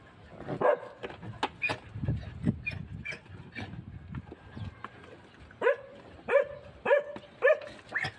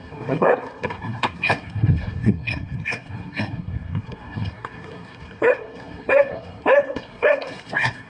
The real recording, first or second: first